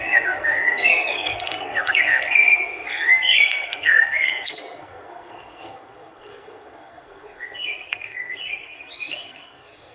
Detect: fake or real fake